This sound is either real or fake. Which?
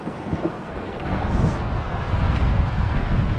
fake